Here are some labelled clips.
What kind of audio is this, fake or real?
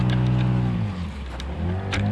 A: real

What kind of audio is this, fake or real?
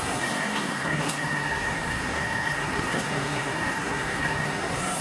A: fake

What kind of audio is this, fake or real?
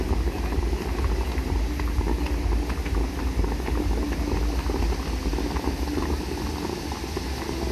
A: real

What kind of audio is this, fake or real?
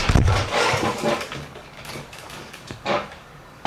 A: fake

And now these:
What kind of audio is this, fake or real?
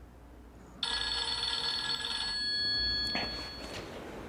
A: real